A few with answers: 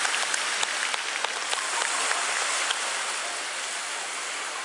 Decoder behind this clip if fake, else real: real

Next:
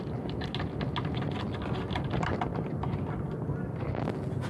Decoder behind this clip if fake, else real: real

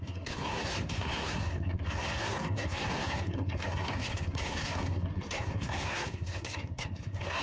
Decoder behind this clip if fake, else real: fake, codec, SNAC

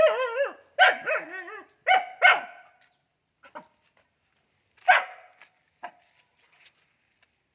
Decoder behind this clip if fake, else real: real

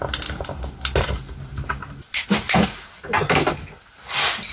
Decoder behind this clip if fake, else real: real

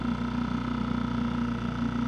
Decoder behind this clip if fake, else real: real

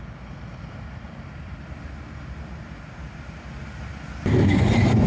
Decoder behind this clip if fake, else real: real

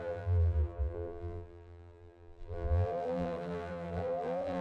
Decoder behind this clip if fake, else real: fake, vocoder, BigVGAN v2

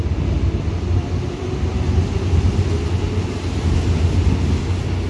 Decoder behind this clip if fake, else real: real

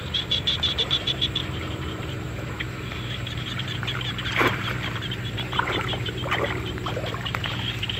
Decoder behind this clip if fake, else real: fake, vocoder, BigVGAN v2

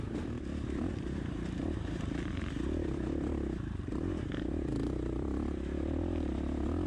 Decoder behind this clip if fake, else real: fake, vocoder, BigVGAN v2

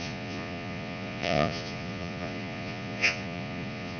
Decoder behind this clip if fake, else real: fake, vocoder, Vocos